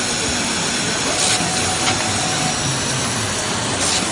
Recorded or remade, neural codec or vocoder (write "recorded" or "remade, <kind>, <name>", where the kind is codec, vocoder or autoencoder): recorded